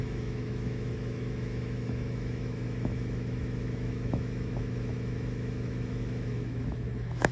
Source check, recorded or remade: remade